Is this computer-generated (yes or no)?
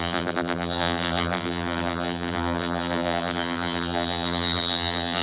yes